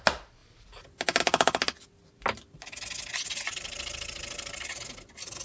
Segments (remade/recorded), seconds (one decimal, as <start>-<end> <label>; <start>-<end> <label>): 0.0-5.4 recorded